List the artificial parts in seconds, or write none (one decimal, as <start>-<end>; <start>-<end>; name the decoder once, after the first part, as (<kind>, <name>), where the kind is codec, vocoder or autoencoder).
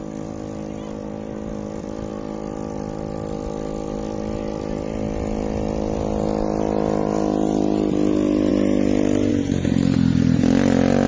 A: none